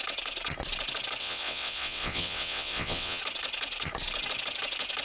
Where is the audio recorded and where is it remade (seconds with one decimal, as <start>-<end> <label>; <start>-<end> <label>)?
0.0-1.2 recorded; 1.2-3.2 remade; 3.2-5.0 recorded